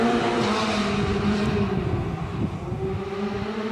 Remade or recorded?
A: recorded